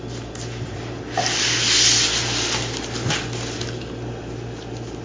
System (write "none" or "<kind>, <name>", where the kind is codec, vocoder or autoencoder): none